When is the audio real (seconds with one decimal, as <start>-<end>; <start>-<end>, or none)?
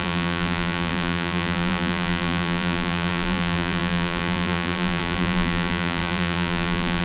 none